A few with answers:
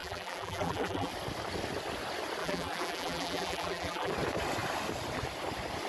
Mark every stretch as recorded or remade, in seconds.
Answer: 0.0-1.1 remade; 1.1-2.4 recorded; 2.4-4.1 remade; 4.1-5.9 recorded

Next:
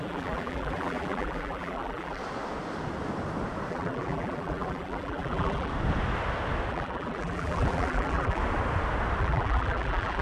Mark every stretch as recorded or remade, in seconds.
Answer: 0.0-2.2 remade; 2.2-3.7 recorded; 3.7-5.7 remade; 5.7-6.7 recorded; 6.7-8.4 remade; 8.4-9.2 recorded; 9.2-10.2 remade